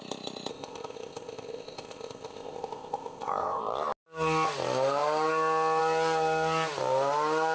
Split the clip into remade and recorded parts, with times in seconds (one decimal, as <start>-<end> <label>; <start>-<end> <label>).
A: 0.0-0.5 recorded; 0.5-3.6 remade; 3.6-7.5 recorded

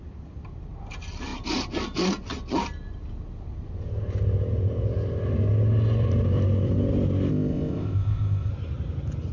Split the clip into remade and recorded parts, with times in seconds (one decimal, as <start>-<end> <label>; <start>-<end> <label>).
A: 0.0-7.3 recorded; 7.3-8.5 remade; 8.5-9.3 recorded

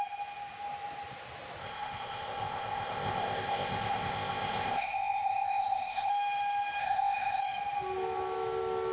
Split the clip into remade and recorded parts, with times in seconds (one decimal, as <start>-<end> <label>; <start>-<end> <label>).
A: 0.0-1.6 recorded; 1.6-6.1 remade; 6.1-6.8 recorded; 6.8-7.4 remade; 7.4-8.9 recorded

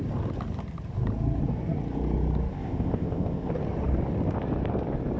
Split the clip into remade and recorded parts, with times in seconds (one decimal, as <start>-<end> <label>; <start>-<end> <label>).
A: 0.0-2.5 recorded; 2.5-3.5 remade; 3.5-5.2 recorded

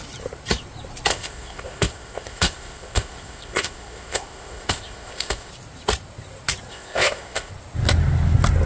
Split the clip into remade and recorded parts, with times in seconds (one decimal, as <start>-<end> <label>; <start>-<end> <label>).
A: 0.0-1.1 recorded; 1.1-5.5 remade; 5.5-6.7 recorded; 6.7-7.5 remade; 7.5-8.7 recorded

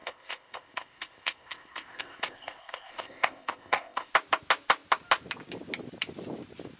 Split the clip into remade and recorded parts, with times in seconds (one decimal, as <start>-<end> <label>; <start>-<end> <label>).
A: 0.0-4.1 remade; 4.1-6.8 recorded

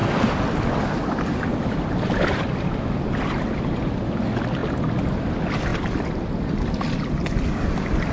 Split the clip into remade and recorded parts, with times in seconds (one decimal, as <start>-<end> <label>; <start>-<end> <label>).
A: 0.0-8.1 recorded